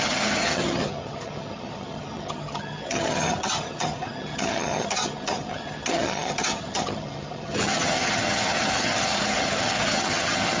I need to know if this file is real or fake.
fake